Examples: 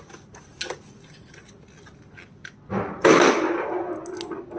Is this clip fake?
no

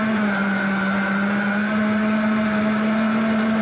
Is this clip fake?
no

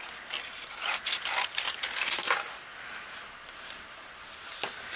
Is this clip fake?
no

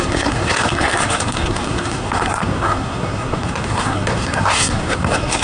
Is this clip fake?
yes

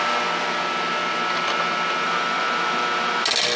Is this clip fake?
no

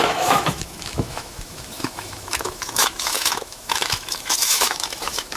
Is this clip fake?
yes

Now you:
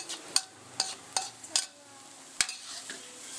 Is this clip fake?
no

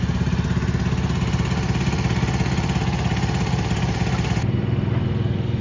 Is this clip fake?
no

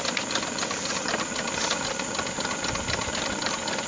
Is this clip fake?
no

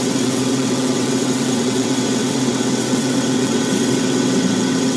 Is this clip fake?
yes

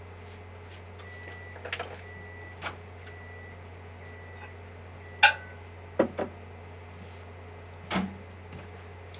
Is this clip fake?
no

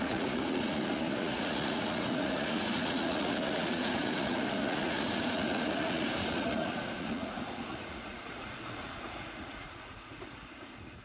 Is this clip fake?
yes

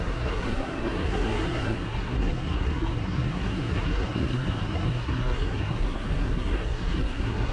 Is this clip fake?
yes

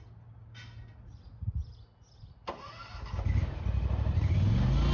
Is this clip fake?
no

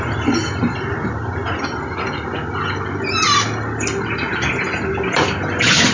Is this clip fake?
no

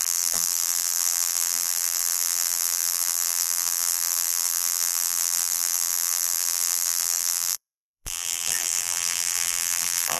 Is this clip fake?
yes